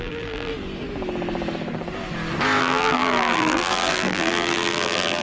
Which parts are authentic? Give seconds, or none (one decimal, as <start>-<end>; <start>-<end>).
0.5-2.6

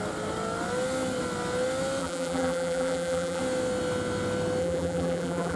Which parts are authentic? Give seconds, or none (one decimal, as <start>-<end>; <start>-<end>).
0.0-2.0; 3.4-4.6

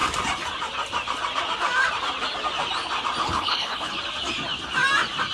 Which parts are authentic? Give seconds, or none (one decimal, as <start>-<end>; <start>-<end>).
0.0-3.2; 3.9-5.3